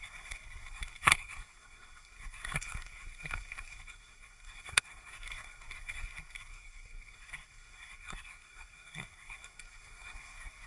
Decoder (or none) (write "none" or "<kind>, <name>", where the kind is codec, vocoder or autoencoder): codec, SNAC